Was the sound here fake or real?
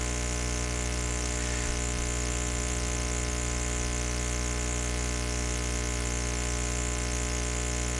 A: real